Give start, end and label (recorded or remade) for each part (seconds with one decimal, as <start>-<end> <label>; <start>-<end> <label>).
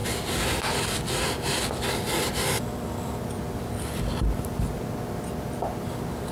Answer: 0.0-6.3 recorded